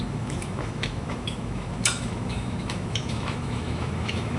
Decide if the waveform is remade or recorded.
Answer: remade